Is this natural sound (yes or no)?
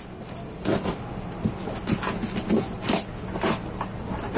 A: yes